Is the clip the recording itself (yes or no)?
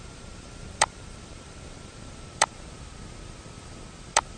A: no